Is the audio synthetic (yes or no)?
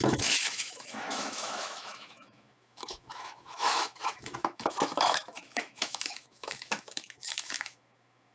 yes